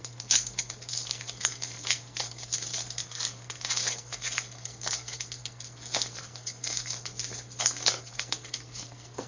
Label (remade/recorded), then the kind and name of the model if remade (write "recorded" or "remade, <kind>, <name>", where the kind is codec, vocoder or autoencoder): remade, codec, SNAC